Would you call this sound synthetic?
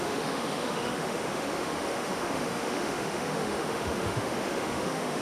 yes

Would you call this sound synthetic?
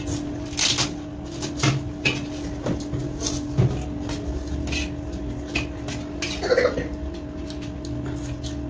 no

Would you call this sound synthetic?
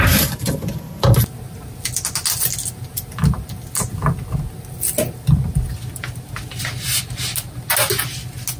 no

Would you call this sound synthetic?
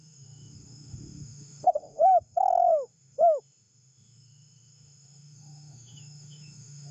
yes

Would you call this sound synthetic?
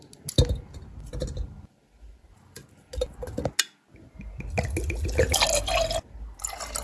no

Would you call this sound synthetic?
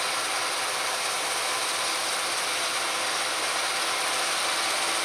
no